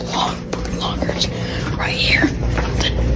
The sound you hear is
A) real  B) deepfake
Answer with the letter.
B